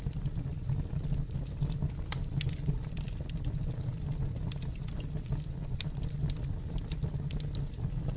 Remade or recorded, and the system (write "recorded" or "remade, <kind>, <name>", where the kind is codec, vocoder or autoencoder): recorded